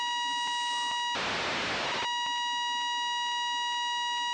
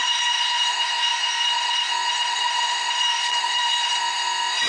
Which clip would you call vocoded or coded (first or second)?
second